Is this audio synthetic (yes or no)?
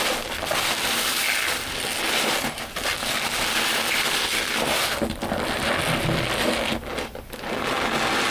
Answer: no